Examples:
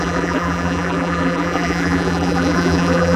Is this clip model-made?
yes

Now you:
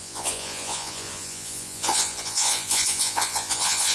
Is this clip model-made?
yes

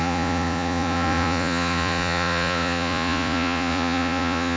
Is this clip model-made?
yes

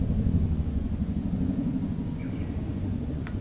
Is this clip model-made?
yes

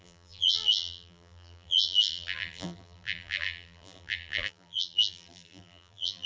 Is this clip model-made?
yes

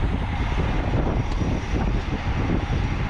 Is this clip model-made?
no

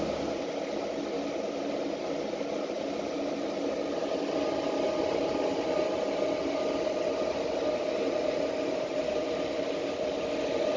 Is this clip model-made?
no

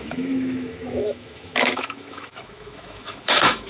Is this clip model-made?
yes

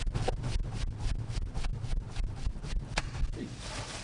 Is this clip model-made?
no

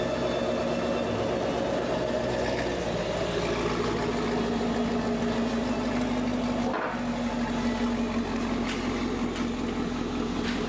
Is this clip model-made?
no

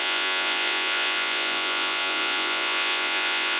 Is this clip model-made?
yes